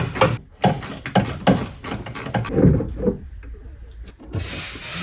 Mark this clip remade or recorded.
recorded